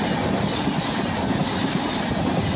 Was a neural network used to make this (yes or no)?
no